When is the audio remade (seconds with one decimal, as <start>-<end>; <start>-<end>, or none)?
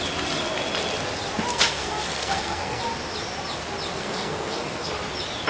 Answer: 1.5-2.8; 3.9-4.9